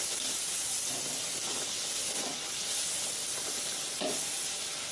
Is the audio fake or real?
real